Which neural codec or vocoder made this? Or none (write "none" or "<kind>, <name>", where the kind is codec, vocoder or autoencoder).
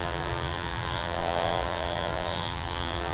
vocoder, BigVGAN v2